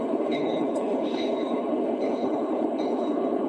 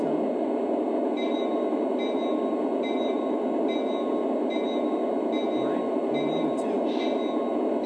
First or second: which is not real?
first